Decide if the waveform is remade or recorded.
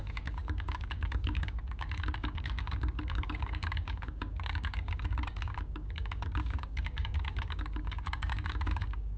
remade